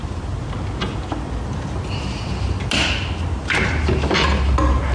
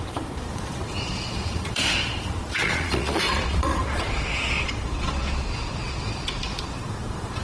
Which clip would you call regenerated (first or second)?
second